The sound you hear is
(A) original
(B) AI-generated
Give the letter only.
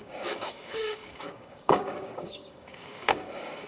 B